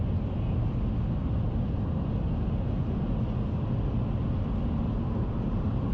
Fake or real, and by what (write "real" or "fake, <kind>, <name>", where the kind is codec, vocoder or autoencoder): real